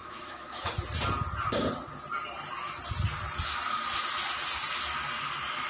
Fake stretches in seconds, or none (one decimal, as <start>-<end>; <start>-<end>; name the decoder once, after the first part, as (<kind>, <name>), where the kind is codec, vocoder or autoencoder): 0.0-0.7 (autoencoder, DAC-VAE)